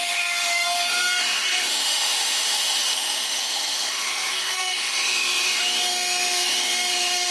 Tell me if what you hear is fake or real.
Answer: fake